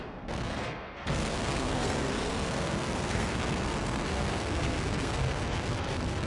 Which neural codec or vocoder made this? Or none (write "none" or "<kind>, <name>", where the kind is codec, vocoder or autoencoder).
codec, SNAC